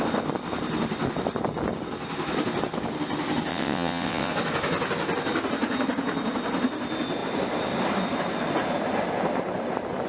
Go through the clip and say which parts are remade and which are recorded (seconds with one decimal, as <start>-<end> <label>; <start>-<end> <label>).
0.0-3.5 recorded; 3.5-4.3 remade; 4.3-10.1 recorded